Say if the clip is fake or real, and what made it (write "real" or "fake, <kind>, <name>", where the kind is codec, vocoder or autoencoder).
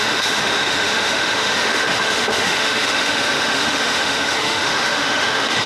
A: fake, autoencoder, DAC-VAE